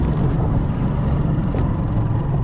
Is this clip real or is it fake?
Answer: real